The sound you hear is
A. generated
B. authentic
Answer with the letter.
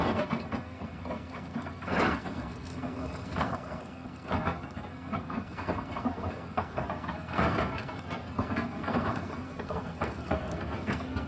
A